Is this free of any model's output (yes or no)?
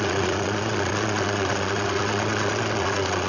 no